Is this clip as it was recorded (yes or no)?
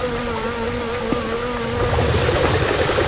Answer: yes